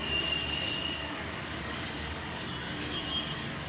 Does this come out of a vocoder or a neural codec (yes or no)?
yes